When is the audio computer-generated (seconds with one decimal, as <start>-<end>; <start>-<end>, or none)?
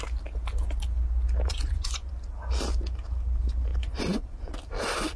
1.5-2.1; 3.7-4.5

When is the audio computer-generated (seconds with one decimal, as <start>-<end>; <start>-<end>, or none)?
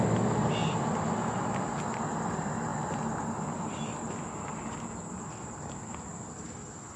none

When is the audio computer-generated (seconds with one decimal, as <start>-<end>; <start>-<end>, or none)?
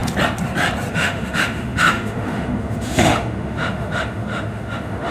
0.9-5.1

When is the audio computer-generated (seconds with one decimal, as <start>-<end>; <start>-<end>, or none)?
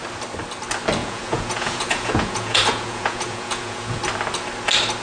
1.0-4.0